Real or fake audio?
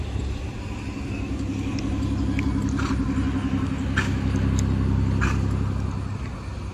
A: real